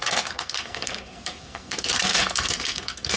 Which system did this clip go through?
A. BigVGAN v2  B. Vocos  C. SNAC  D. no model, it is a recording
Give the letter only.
C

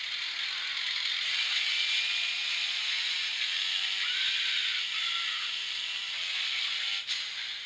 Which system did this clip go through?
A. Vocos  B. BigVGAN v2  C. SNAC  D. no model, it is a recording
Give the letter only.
D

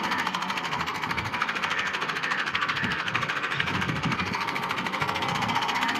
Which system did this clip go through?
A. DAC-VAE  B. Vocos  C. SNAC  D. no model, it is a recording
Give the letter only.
C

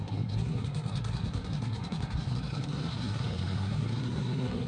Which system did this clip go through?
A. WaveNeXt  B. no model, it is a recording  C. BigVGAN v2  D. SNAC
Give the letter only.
D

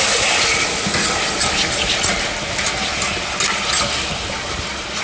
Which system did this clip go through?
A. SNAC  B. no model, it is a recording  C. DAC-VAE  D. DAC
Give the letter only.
B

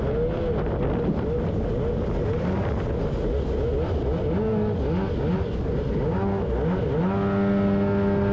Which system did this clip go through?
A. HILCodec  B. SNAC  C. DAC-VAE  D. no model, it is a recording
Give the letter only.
D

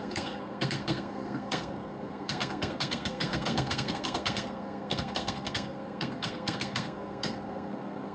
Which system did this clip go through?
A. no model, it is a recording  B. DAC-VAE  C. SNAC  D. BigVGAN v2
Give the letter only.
C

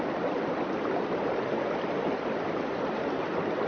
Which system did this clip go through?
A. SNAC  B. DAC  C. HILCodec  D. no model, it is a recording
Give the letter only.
D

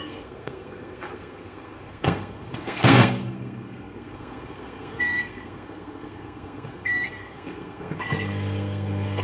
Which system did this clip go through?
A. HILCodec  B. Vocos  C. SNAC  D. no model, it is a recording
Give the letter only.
C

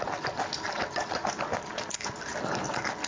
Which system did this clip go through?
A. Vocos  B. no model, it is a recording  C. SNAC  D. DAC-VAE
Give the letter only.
B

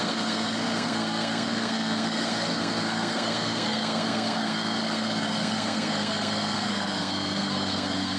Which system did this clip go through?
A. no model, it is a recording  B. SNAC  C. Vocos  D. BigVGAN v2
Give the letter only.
B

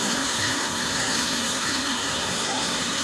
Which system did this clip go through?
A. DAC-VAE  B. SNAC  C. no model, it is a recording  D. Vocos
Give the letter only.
B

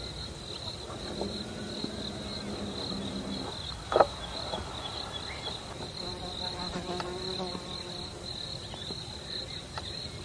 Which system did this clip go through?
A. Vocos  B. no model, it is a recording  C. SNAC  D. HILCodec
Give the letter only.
B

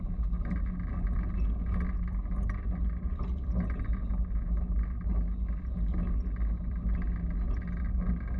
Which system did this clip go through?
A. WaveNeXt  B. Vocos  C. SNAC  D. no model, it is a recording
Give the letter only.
D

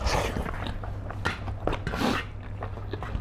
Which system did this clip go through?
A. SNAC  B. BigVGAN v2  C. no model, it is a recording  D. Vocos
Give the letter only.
C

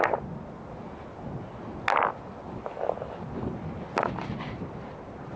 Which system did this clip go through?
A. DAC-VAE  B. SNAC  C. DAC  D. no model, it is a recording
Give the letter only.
D